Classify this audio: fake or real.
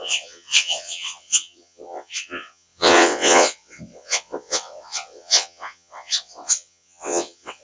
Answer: fake